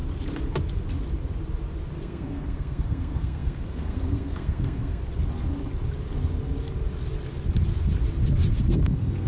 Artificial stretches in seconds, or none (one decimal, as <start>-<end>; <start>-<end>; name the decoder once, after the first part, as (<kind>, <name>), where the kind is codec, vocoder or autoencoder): 2.0-5.0 (codec, SNAC); 8.5-9.3